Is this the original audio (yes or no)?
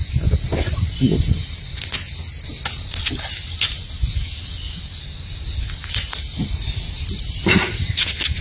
yes